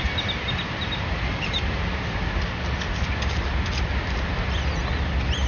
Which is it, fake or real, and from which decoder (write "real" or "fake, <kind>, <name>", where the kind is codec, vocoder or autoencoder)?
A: real